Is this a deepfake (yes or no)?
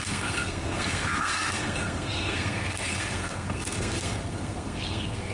yes